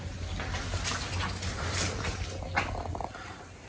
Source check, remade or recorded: recorded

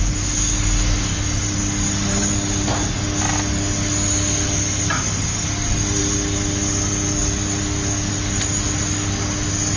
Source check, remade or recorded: recorded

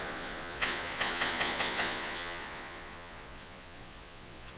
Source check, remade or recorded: remade